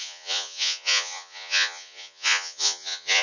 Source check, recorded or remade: remade